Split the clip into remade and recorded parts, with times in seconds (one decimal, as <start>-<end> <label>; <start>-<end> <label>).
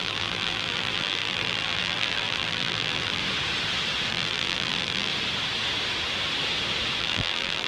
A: 0.0-3.2 remade; 3.2-4.1 recorded; 4.1-5.1 remade; 5.1-7.0 recorded; 7.0-7.7 remade